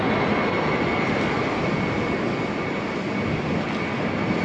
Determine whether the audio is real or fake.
real